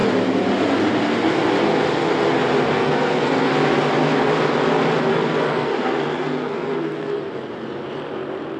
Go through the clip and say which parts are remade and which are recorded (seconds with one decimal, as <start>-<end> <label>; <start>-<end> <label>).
0.0-2.8 recorded; 2.8-3.5 remade; 3.5-5.1 recorded; 5.1-7.2 remade; 7.2-8.6 recorded